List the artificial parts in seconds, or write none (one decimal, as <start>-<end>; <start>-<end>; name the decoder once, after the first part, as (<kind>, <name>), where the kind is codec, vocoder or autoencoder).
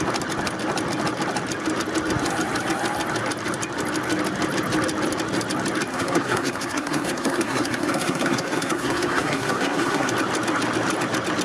5.9-10.1 (codec, SNAC)